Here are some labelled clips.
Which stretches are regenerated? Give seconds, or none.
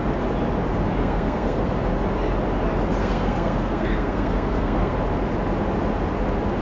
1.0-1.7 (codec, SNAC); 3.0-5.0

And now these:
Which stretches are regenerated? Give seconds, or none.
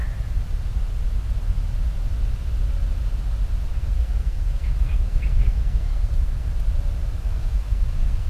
3.7-6.5 (codec, SNAC); 7.2-8.3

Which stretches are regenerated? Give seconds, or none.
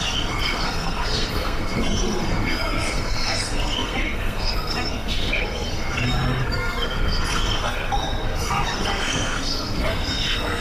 0.0-10.6 (codec, SNAC)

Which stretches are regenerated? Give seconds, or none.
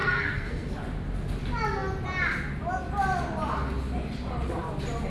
0.0-0.7 (codec, SNAC)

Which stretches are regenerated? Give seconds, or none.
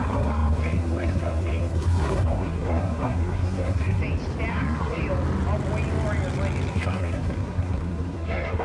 0.0-4.0 (codec, SNAC); 4.5-5.0; 6.7-8.6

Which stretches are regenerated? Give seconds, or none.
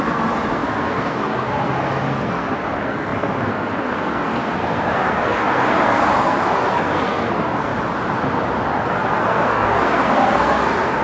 0.0-7.7 (codec, SNAC); 8.8-11.0